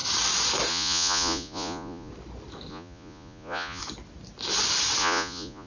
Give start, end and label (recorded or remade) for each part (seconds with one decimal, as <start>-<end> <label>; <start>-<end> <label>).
0.0-0.7 recorded; 0.7-2.1 remade; 2.1-2.7 recorded; 2.7-3.8 remade; 3.8-5.0 recorded; 5.0-5.7 remade